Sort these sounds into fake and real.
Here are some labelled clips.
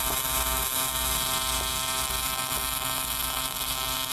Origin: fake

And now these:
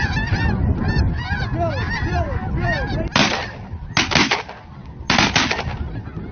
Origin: real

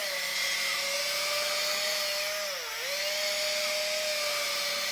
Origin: real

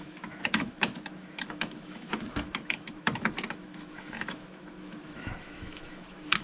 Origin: fake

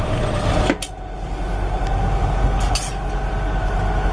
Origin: real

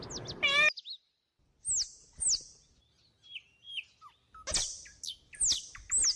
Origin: real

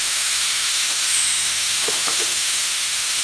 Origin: fake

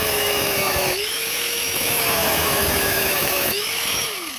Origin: fake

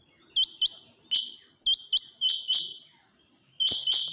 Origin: real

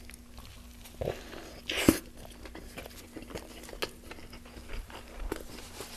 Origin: real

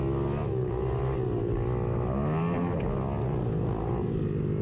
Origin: real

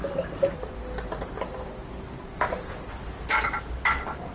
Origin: real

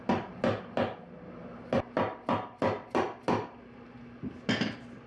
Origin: real